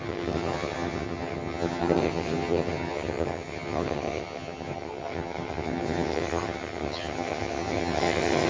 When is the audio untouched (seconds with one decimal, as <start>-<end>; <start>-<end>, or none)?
none